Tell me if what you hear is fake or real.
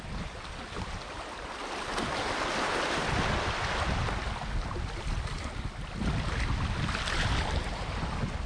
real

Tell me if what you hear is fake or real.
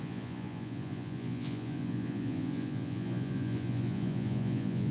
fake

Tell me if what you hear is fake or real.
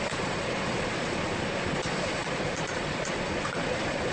fake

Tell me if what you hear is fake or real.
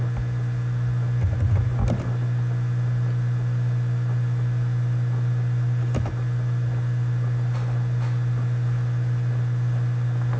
real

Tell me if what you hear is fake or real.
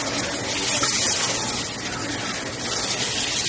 real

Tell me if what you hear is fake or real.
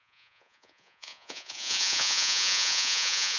fake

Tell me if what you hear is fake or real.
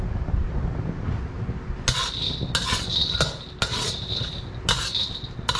real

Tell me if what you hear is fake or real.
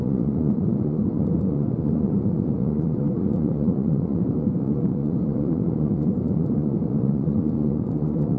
fake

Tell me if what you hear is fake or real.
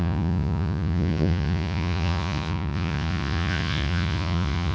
fake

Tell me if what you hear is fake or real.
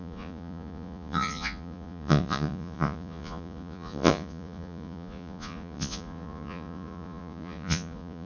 fake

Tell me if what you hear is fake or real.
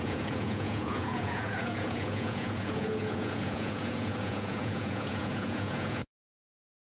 fake